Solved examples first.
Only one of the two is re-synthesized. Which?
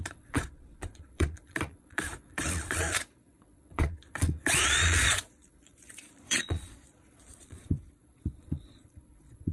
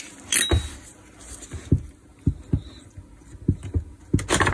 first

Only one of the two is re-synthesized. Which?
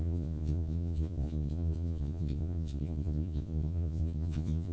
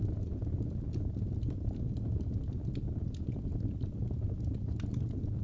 first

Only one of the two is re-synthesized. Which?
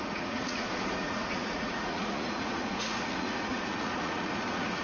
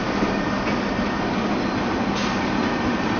first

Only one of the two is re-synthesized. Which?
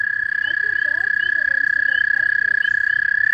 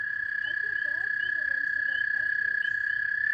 second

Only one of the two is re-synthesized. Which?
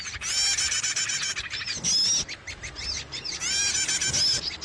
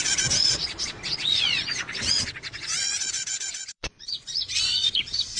second